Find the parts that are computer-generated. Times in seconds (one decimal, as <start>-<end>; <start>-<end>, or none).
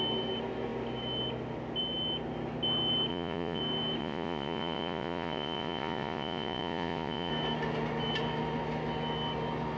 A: 3.1-3.6; 4.0-7.3